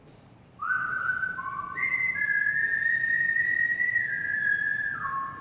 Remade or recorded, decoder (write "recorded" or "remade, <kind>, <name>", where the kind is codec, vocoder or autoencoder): recorded